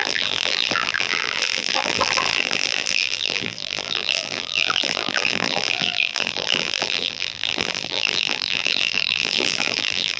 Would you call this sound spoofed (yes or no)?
yes